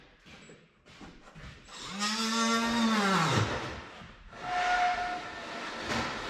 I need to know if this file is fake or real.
real